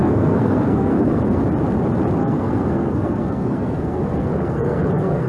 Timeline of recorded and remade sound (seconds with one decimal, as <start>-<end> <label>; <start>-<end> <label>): 0.0-1.4 remade; 1.4-2.2 recorded; 2.2-5.3 remade